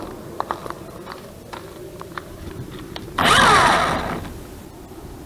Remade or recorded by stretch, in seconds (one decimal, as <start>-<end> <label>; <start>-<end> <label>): 0.0-0.6 recorded; 0.6-3.8 remade; 3.8-5.3 recorded